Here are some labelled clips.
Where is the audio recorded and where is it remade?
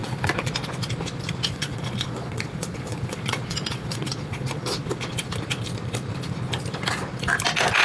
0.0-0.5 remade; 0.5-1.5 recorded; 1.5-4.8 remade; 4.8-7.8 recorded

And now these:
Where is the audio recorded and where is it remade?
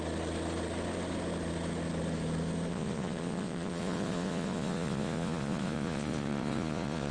0.0-2.7 recorded; 2.7-7.1 remade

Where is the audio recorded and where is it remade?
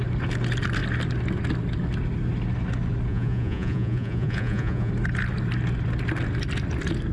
0.0-3.1 recorded; 3.1-4.9 remade; 4.9-7.1 recorded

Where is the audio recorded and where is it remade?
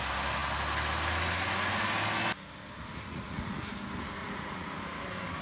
0.0-3.1 recorded; 3.1-3.7 remade; 3.7-4.2 recorded; 4.2-4.8 remade; 4.8-5.4 recorded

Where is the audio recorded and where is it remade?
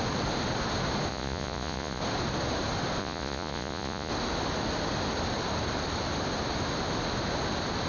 0.0-1.1 recorded; 1.1-2.0 remade; 2.0-3.0 recorded; 3.0-4.1 remade; 4.1-7.9 recorded